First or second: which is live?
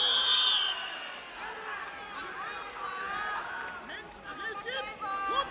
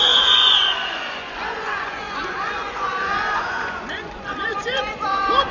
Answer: first